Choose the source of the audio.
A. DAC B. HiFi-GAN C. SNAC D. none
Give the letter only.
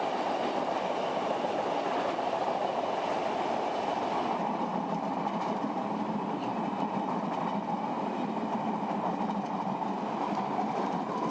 D